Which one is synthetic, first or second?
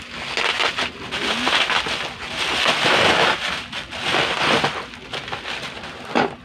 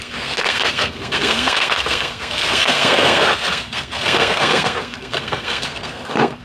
second